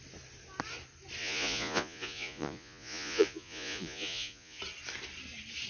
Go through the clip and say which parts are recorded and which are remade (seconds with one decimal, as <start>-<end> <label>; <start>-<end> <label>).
0.0-1.2 recorded; 1.2-4.6 remade; 4.6-5.7 recorded